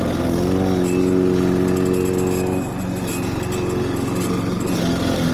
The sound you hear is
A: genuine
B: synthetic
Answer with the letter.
A